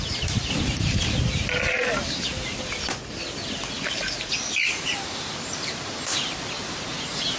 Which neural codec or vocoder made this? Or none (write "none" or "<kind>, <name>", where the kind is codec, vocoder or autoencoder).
none